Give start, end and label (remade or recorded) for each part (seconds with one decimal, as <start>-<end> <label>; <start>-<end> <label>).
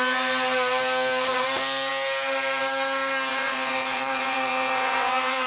0.0-3.3 recorded; 3.3-5.5 remade